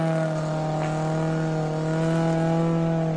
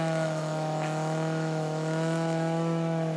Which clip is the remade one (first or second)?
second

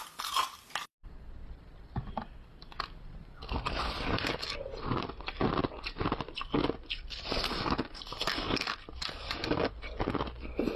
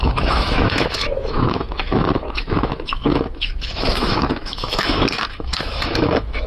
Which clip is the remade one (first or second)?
second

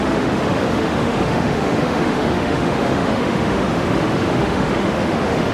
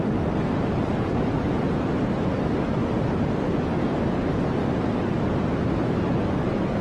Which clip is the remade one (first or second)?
first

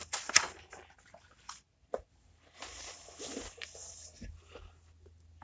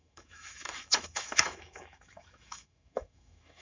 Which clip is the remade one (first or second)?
second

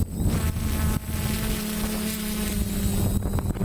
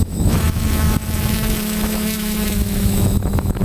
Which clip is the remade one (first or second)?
second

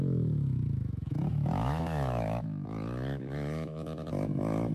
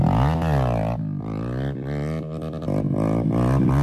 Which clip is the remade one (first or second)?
first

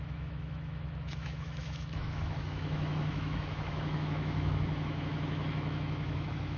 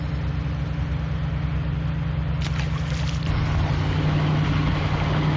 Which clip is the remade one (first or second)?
first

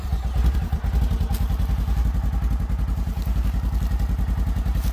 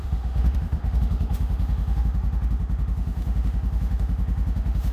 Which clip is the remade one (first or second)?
second